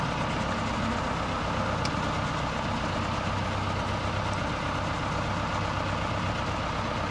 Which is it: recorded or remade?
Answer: recorded